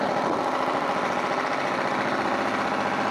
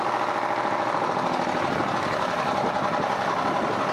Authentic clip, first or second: second